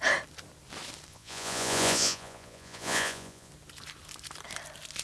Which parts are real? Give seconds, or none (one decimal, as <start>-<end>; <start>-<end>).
0.0-1.1; 3.5-5.0